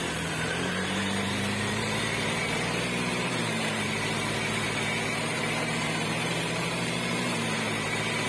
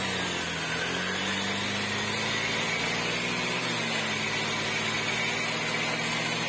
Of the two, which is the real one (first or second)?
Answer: second